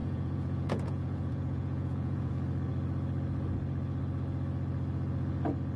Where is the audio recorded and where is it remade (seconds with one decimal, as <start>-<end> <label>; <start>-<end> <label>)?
0.0-2.3 remade; 2.3-5.8 recorded